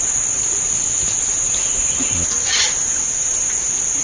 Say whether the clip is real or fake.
real